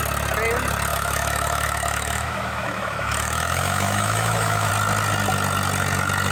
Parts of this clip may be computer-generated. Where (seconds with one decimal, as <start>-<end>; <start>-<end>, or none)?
0.9-4.7